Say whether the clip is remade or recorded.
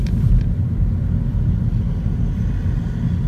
recorded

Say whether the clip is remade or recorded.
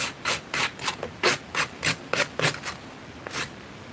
recorded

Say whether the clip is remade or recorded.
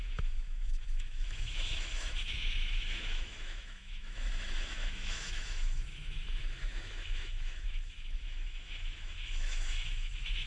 remade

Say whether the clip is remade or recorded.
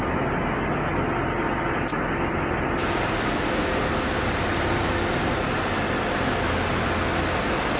recorded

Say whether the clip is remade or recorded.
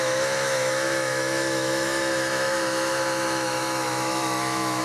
remade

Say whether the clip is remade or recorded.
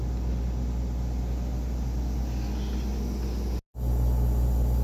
recorded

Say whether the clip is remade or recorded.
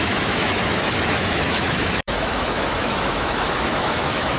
remade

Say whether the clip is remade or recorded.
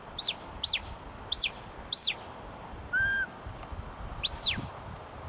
recorded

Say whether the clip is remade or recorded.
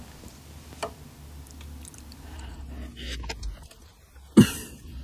recorded